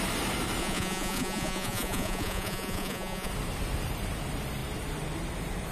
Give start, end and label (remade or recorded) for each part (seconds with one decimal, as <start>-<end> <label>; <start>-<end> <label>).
0.0-0.6 recorded; 0.6-3.3 remade; 3.3-5.7 recorded